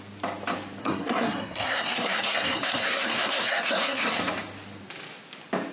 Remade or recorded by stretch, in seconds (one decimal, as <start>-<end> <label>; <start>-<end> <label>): 0.0-0.8 recorded; 0.8-4.2 remade; 4.2-5.7 recorded